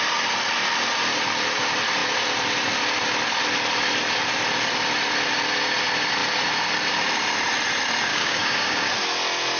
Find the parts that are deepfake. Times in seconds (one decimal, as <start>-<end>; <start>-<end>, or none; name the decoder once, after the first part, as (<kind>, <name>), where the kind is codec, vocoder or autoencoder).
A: 8.1-8.9 (codec, DAC)